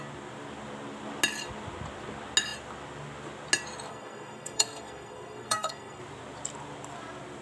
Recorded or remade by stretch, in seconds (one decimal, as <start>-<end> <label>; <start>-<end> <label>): 0.0-3.9 recorded; 3.9-6.0 remade; 6.0-7.4 recorded